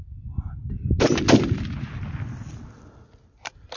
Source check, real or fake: real